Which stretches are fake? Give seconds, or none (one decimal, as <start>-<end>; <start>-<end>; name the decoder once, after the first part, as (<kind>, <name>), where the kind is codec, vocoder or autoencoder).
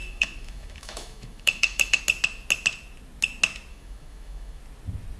0.0-2.0 (autoencoder, DAC-VAE); 3.7-4.6